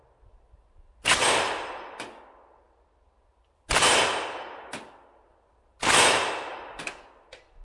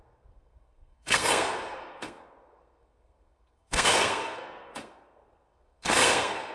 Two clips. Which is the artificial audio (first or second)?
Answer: second